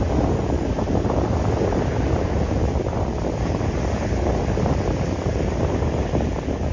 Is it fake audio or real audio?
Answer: real